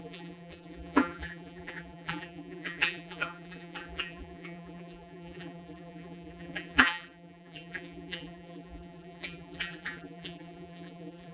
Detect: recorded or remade remade